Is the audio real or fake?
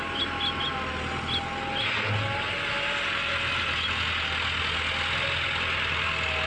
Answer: real